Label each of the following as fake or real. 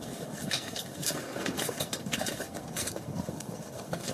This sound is fake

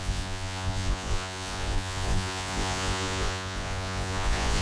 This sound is fake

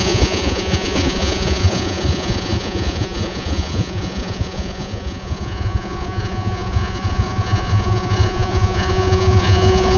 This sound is fake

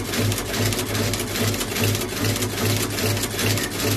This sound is real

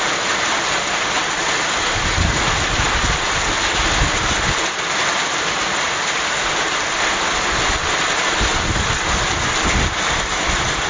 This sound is real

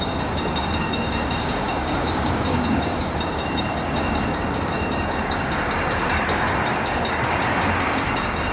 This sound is fake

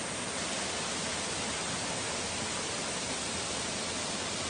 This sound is real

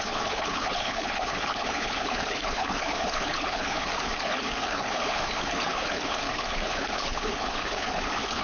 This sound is fake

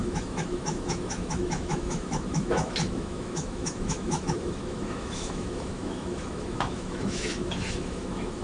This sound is fake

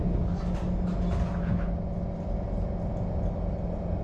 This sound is real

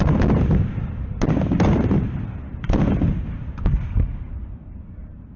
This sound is real